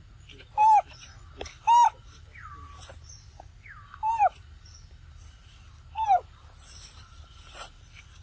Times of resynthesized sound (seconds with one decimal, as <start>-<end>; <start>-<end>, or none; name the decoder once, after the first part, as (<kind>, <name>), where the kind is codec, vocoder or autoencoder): none